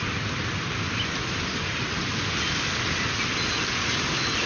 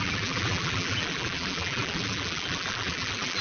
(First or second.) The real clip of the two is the first